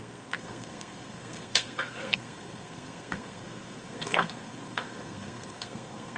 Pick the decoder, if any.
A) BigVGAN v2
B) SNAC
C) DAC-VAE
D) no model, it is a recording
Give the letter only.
B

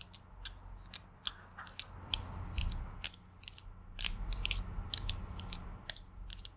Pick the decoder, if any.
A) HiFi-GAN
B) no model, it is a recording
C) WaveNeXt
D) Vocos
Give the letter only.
B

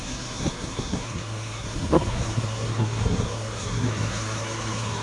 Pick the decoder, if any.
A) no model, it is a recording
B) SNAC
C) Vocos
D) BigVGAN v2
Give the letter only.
B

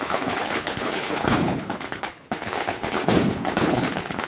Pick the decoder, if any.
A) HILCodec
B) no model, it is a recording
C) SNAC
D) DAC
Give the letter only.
A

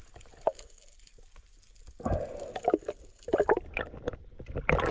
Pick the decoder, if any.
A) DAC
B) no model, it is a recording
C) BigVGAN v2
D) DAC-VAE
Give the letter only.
B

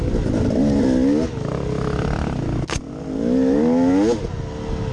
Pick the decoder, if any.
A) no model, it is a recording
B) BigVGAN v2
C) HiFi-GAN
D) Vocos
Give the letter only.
A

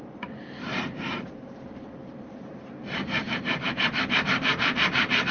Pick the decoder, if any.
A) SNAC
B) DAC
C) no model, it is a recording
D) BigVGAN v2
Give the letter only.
D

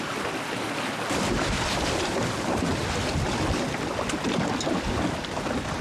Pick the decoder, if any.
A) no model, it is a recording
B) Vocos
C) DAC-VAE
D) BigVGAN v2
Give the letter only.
A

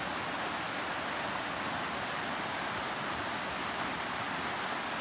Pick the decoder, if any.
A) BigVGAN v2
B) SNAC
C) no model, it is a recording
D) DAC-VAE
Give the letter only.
C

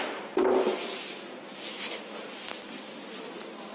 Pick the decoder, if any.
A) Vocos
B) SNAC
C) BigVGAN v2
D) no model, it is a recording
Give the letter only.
D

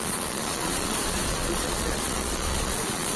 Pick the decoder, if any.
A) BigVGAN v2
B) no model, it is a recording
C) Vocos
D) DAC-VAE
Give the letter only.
C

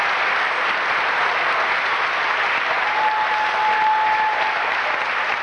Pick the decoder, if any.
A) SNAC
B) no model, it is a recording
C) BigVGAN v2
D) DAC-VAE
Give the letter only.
B